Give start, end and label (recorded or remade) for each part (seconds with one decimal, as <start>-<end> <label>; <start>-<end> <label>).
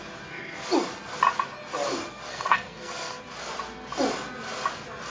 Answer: 0.0-2.3 recorded; 2.3-3.2 remade; 3.2-5.1 recorded